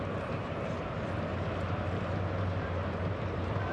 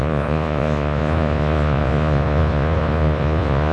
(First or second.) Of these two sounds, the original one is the first